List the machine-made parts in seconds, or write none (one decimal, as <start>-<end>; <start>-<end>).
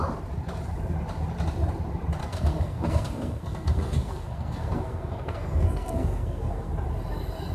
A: 2.2-6.7